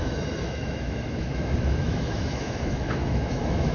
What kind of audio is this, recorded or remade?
remade